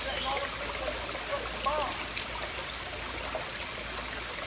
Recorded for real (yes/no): yes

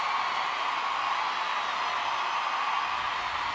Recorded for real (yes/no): yes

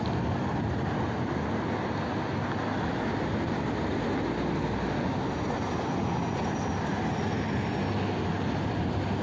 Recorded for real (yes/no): yes